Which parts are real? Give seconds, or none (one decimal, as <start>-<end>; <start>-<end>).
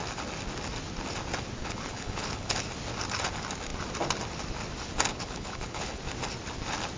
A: 0.0-1.6; 2.6-5.1; 6.0-7.0